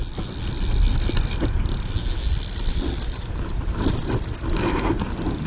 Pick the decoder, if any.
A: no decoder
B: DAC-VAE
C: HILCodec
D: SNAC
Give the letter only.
A